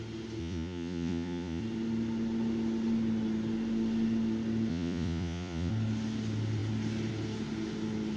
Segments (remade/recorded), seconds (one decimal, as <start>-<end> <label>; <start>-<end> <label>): 0.0-0.4 recorded; 0.4-1.6 remade; 1.6-4.7 recorded; 4.7-5.7 remade; 5.7-8.2 recorded